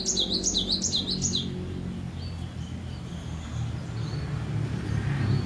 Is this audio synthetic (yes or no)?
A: no